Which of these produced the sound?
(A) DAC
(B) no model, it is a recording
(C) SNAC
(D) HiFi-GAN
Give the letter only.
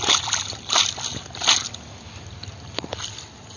B